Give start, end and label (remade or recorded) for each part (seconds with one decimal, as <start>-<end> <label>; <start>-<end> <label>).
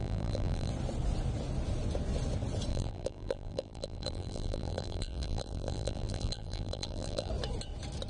0.0-0.7 remade; 0.7-2.7 recorded; 2.7-7.3 remade; 7.3-8.1 recorded